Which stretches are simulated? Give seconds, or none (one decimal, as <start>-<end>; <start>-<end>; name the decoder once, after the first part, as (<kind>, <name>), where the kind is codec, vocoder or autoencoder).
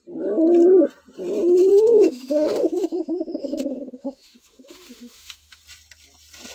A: 1.7-5.6 (autoencoder, DAC-VAE)